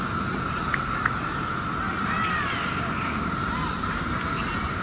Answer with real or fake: fake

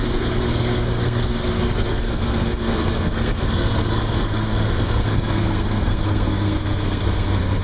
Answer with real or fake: fake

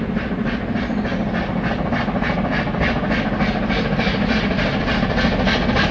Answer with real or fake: real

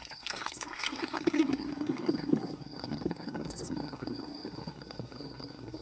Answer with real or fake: fake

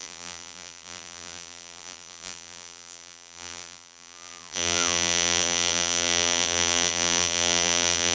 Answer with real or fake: fake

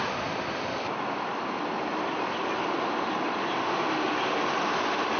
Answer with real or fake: real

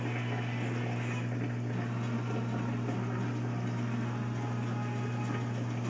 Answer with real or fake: real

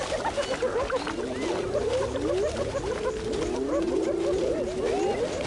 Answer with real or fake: real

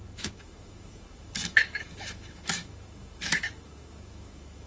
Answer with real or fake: fake